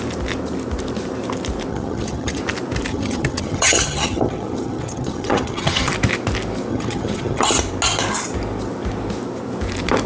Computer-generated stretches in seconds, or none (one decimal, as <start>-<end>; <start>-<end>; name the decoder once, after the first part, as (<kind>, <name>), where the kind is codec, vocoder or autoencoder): 1.7-2.4 (vocoder, HiFi-GAN); 2.9-5.9; 6.7-7.5